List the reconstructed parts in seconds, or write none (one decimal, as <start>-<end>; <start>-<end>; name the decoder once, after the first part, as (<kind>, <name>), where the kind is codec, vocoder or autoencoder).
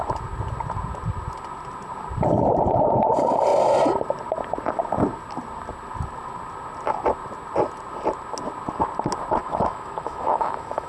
9.4-10.9 (autoencoder, DAC-VAE)